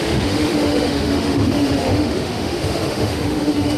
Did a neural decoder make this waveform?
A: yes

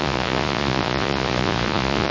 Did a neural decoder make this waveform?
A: yes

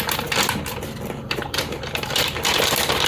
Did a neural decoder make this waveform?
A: no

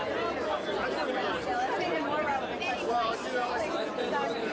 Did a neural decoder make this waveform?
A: yes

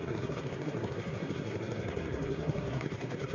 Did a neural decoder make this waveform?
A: yes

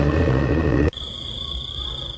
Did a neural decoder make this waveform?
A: yes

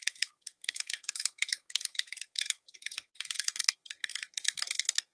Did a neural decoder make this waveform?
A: yes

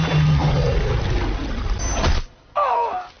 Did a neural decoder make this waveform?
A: no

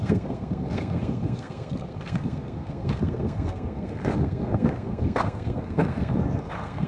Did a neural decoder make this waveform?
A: yes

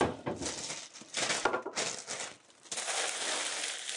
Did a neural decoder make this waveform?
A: no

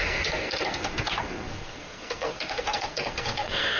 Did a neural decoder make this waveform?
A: yes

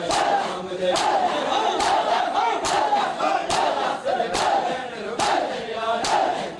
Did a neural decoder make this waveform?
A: yes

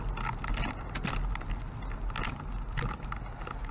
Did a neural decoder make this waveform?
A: no